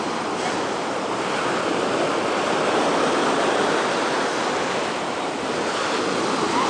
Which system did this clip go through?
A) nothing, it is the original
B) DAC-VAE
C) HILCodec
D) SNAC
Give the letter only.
A